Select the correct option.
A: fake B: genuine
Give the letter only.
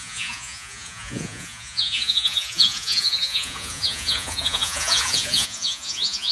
A